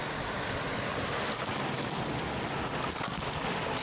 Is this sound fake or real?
real